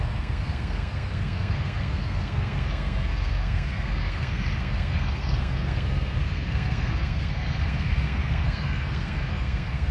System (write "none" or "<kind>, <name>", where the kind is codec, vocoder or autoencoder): codec, SNAC